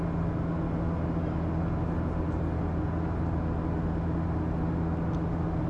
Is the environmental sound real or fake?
real